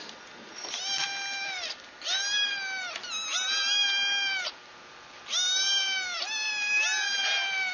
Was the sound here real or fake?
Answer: real